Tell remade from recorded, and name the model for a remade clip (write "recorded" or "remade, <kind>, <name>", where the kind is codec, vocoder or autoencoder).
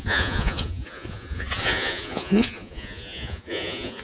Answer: remade, vocoder, Vocos